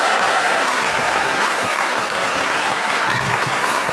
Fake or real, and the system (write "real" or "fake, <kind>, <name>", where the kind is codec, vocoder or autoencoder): fake, codec, SNAC